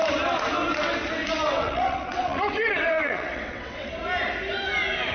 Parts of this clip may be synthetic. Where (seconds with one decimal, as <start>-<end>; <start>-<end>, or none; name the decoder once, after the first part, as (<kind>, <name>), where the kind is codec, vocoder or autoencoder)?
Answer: 1.2-3.9 (vocoder, WaveNeXt)